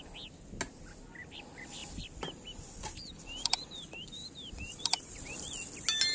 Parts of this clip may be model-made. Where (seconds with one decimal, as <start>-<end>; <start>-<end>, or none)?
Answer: 1.8-5.5